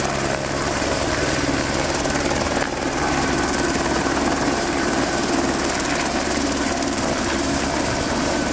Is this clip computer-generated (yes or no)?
yes